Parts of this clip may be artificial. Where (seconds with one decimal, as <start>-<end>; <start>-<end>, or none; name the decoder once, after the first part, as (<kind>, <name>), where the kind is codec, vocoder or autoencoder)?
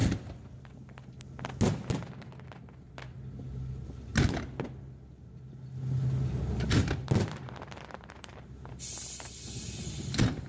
none